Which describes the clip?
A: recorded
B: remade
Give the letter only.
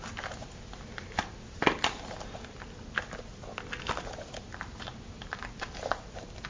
A